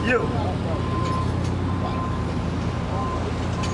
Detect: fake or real real